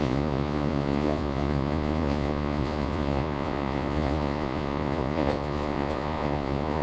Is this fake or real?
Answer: fake